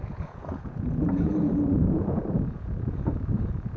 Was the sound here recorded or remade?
remade